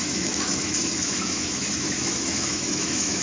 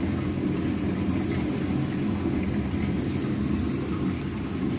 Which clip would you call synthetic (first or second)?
first